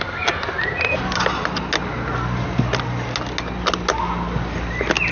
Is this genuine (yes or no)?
yes